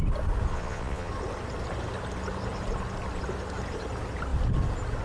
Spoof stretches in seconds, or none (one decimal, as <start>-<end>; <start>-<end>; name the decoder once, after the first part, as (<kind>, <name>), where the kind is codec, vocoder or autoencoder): 0.5-1.1 (vocoder, Vocos)